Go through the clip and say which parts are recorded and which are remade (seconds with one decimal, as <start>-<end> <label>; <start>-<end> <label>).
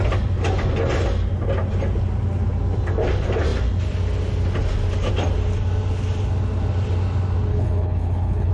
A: 0.0-7.5 recorded; 7.5-8.5 remade